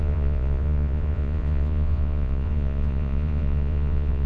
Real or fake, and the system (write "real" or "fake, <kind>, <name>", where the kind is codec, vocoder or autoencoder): fake, vocoder, Vocos